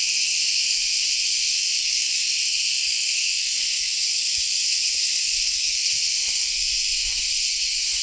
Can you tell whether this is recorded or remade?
remade